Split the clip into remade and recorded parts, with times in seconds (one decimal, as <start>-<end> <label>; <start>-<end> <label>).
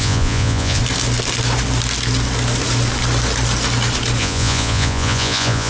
0.0-0.8 remade; 0.8-4.2 recorded; 4.2-5.7 remade